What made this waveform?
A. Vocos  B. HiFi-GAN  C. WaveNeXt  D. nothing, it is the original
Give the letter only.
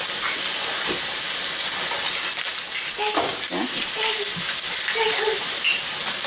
D